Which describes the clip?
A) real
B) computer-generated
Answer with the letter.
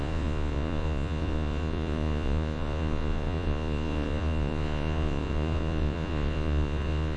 B